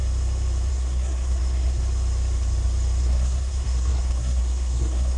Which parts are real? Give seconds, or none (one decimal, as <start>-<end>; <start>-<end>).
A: 0.0-0.7; 1.8-3.0